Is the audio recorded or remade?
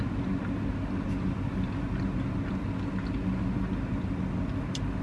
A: recorded